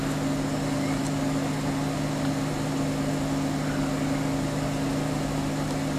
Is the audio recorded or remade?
recorded